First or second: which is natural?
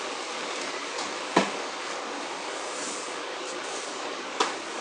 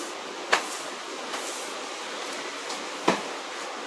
second